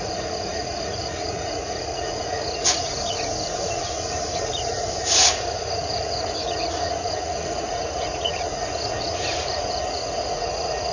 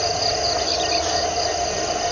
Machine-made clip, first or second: first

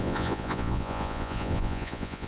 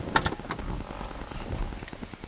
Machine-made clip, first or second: first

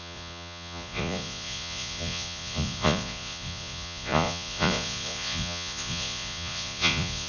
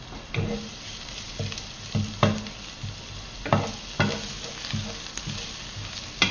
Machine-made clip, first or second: first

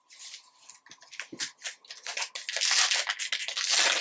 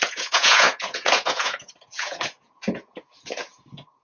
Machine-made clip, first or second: second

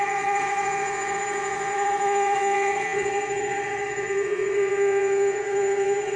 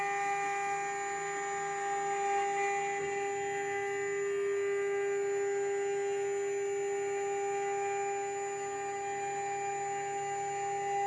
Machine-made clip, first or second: first